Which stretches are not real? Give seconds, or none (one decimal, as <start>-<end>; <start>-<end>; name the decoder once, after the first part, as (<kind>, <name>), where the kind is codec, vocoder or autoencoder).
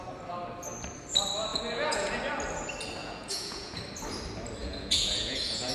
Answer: 1.5-2.1 (vocoder, Vocos); 3.0-3.8; 4.6-5.7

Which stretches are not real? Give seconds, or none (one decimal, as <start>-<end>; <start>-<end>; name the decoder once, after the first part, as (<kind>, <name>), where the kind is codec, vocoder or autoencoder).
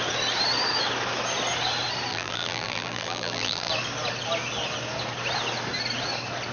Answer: 2.1-3.7 (vocoder, BigVGAN v2)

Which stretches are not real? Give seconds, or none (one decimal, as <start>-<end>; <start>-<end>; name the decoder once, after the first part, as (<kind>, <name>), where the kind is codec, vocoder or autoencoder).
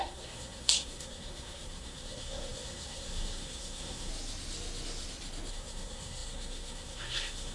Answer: 0.0-4.1 (codec, SNAC); 5.5-7.5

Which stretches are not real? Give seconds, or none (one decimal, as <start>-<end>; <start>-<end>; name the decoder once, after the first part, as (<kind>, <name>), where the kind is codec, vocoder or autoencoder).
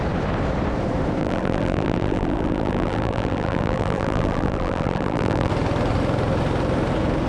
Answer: 1.2-5.5 (vocoder, BigVGAN v2)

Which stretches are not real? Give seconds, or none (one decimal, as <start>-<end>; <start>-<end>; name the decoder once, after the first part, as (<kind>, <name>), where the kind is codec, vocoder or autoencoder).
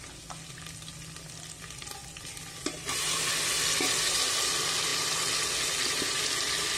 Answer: none